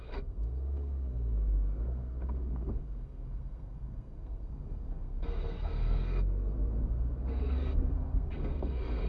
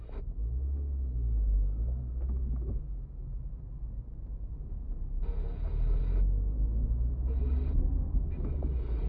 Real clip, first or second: second